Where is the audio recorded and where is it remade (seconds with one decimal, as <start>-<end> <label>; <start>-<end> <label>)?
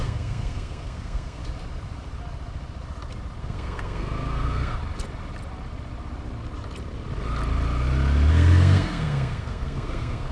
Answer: 0.0-1.4 remade; 1.4-3.4 recorded; 3.4-4.8 remade; 4.8-8.3 recorded; 8.3-10.3 remade